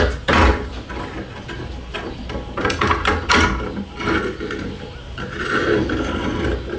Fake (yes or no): no